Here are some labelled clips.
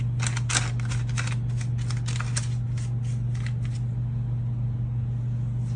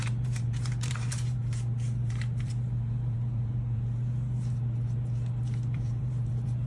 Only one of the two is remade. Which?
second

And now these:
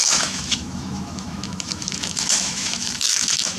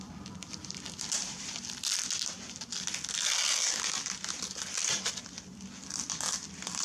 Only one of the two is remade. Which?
first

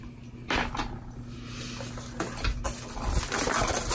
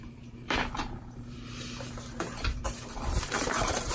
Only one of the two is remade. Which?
second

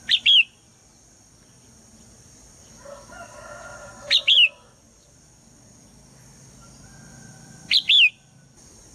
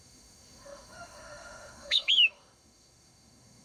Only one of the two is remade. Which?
second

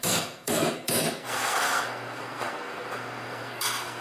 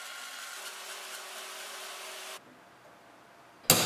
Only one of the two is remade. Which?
first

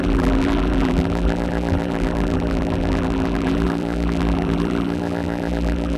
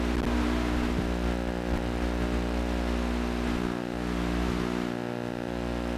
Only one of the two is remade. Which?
first